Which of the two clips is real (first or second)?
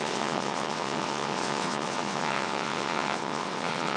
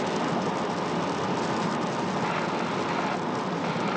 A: second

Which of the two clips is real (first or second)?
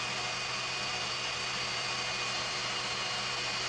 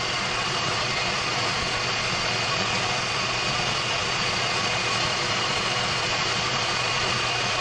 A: first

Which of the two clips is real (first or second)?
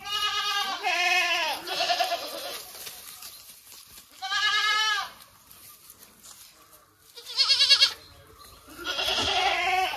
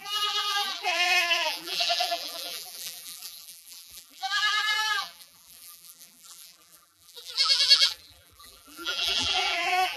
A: first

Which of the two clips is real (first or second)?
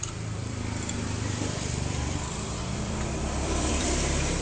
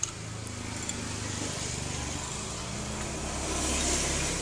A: second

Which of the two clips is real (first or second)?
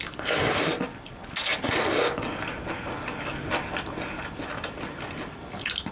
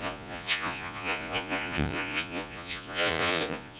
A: first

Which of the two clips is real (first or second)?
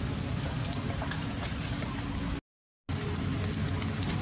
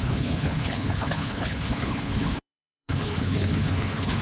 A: first